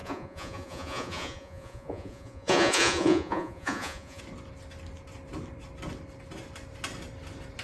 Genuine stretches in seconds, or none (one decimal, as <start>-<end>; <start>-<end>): 4.2-7.6

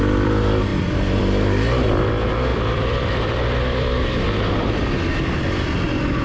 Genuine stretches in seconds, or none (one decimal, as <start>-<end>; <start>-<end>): 0.0-0.7; 1.2-2.5; 4.7-6.2

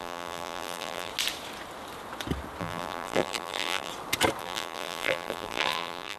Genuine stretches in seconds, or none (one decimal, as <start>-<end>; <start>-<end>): 1.1-2.6; 3.9-4.4

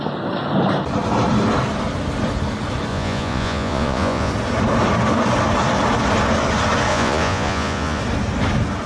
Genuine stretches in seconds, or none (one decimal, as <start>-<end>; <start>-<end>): 0.0-2.9; 4.3-6.9; 8.0-8.9